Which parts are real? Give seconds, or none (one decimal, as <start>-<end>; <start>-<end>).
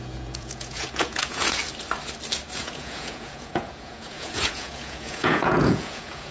1.6-2.6